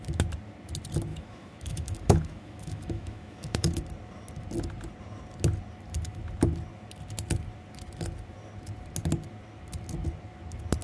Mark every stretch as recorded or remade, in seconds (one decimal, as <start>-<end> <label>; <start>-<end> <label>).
0.0-1.1 recorded; 1.1-3.8 remade; 3.8-10.8 recorded